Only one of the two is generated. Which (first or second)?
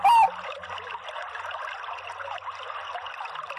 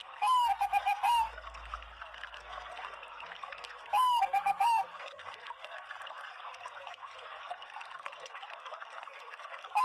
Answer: second